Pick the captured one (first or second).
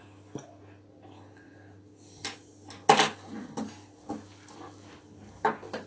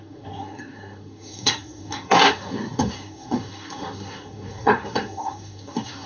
first